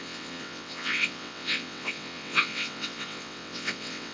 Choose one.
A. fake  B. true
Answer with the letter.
A